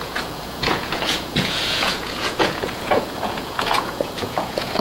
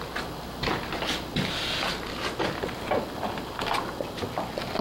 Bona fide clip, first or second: second